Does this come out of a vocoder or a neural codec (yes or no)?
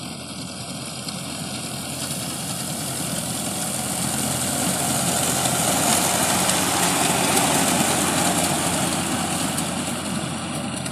no